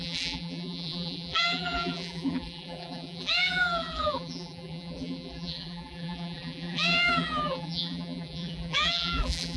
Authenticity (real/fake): fake